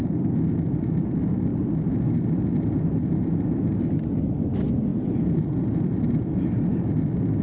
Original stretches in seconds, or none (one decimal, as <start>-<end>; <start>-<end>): 0.0-4.9; 5.4-7.4